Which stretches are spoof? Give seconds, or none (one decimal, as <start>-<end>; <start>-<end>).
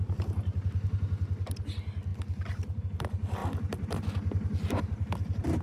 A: 2.1-2.8; 3.4-4.0